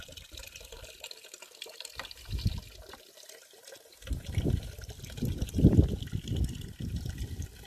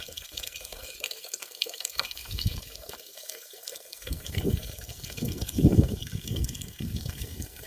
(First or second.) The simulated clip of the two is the second